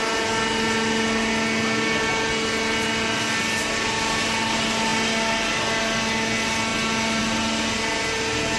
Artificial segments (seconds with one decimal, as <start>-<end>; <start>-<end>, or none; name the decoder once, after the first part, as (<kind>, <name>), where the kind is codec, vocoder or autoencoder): none